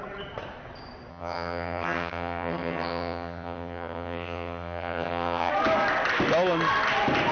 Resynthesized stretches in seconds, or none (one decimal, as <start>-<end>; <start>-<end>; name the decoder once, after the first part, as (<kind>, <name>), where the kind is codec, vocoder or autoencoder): 1.1-5.5 (vocoder, HiFi-GAN)